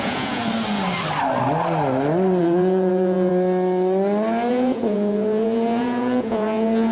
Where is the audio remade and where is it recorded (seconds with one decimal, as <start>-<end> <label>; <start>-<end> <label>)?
0.0-0.4 remade; 0.4-2.4 recorded; 2.4-3.3 remade; 3.3-4.5 recorded; 4.5-6.9 remade